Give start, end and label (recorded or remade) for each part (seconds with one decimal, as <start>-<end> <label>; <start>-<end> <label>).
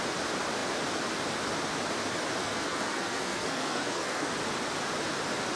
0.0-2.4 recorded; 2.4-4.3 remade; 4.3-5.6 recorded